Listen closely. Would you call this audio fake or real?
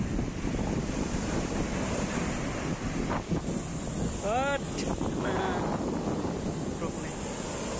real